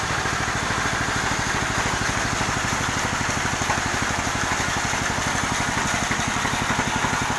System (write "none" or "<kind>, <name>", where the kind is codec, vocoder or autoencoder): none